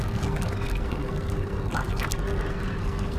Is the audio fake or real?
fake